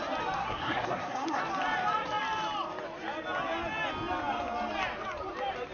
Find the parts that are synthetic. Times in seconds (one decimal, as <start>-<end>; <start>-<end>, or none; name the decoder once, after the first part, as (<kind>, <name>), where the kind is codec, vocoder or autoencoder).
0.4-1.4 (codec, SNAC)